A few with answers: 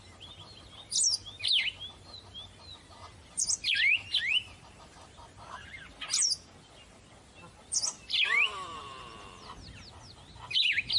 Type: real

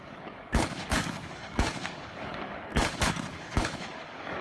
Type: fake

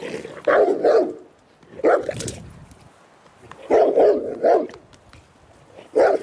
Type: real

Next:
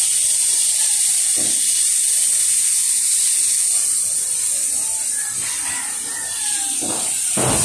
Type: real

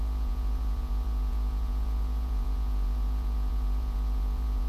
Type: fake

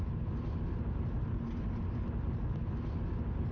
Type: real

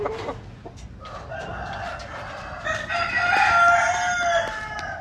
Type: real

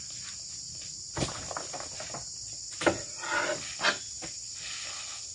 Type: real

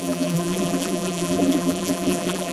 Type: fake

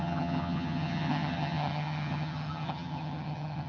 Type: fake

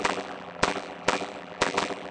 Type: fake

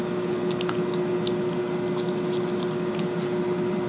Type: real